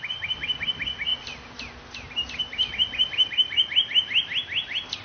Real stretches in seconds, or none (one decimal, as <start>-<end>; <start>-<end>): 0.0-5.0